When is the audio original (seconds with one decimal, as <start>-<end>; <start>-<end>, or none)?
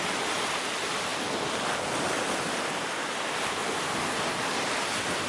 1.1-2.8; 3.6-4.6